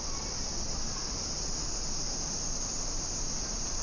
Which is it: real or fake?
real